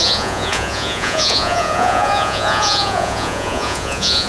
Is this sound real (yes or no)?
no